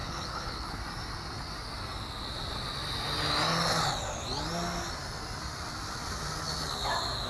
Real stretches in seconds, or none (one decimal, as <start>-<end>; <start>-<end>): 0.8-7.3

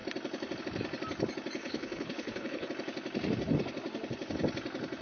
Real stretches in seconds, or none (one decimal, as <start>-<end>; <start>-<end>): 0.0-1.6; 2.7-5.0

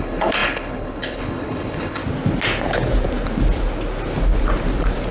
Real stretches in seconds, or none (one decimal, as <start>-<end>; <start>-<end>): 2.0-5.1